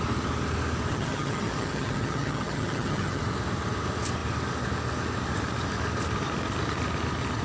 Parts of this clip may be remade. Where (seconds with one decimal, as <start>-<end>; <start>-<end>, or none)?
0.9-3.2